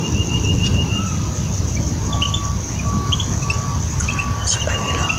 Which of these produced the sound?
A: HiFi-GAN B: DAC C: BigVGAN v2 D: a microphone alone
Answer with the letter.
D